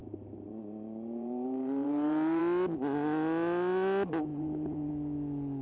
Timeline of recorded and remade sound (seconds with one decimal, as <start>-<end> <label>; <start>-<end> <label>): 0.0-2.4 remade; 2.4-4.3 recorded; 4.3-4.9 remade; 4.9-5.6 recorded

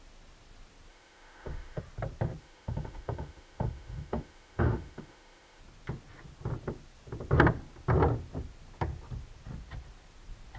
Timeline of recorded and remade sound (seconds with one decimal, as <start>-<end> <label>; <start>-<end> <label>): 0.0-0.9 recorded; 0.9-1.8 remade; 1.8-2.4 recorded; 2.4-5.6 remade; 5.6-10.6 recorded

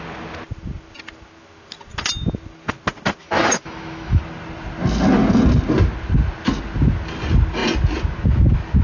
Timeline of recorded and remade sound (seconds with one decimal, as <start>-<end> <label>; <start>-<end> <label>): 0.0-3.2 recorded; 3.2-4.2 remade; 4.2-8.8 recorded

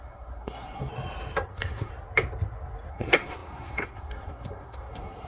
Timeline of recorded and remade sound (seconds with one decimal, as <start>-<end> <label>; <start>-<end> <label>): 0.0-0.9 remade; 0.9-1.5 recorded; 1.5-1.9 remade; 1.9-2.9 recorded; 2.9-5.3 remade

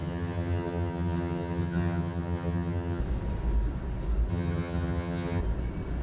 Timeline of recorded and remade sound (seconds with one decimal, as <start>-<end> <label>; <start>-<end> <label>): 0.0-3.0 remade; 3.0-4.3 recorded; 4.3-5.4 remade; 5.4-6.0 recorded